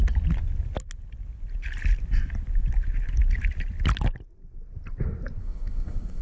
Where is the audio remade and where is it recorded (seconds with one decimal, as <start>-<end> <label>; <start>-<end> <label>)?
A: 0.0-5.4 recorded; 5.4-6.2 remade